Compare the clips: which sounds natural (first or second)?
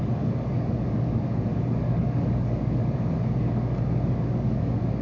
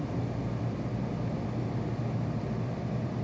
second